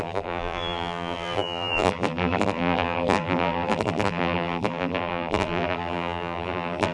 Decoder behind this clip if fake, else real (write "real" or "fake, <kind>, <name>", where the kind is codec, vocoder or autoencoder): fake, vocoder, BigVGAN v2